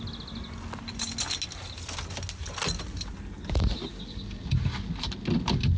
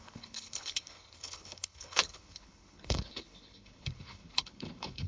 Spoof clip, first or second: second